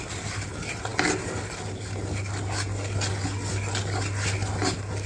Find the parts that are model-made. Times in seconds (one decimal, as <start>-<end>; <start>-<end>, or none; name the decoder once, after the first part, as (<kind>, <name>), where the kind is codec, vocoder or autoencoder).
none